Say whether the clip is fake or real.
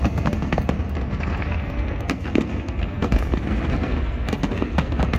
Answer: fake